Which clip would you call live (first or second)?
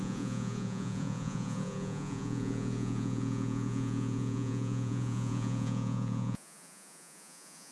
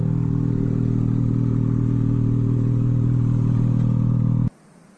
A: second